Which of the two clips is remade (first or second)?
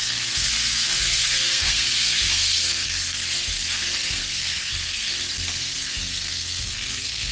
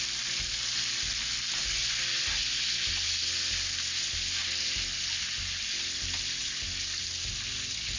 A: first